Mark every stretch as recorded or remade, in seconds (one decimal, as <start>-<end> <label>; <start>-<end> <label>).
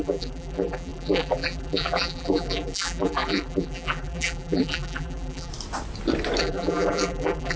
0.0-5.5 remade; 5.5-6.4 recorded; 6.4-7.6 remade